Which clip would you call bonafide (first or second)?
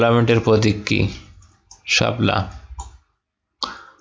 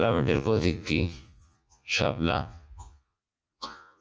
first